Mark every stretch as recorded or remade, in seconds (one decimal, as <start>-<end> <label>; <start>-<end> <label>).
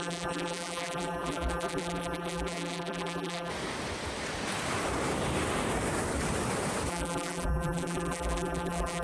0.0-3.5 remade; 3.5-6.9 recorded; 6.9-9.0 remade